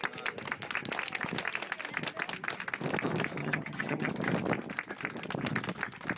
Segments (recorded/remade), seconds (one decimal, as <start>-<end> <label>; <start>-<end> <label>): 0.0-3.4 recorded; 3.4-4.1 remade; 4.1-6.2 recorded